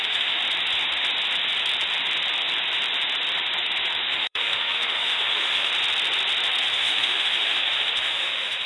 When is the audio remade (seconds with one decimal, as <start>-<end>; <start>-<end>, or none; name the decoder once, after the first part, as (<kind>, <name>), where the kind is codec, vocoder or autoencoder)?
0.0-0.4 (autoencoder, DAC-VAE); 4.1-5.7; 6.7-8.7